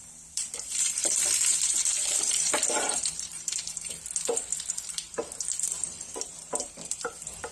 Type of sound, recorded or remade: remade